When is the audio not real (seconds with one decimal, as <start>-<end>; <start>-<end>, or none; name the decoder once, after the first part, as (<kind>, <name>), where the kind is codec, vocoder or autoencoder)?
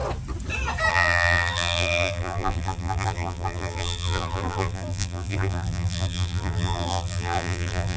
0.9-8.0 (vocoder, BigVGAN v2)